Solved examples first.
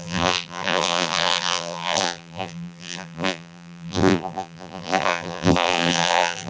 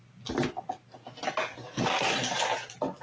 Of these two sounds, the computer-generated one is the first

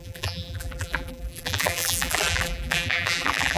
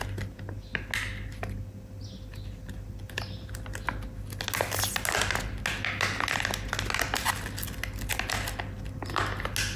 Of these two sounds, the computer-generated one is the first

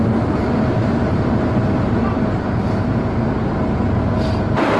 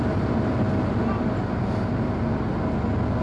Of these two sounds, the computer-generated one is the first